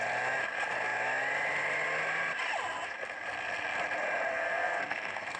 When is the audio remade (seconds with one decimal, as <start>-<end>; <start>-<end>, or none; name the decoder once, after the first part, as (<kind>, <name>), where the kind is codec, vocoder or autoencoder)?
4.3-5.4 (codec, SNAC)